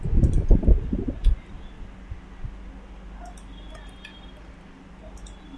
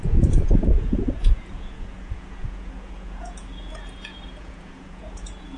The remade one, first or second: second